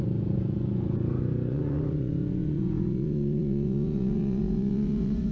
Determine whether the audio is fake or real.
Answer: fake